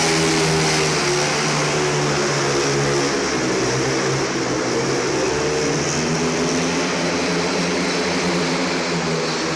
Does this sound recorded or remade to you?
recorded